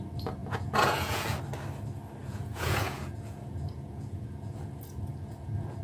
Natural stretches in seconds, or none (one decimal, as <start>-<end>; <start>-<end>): 0.0-0.4; 1.4-2.2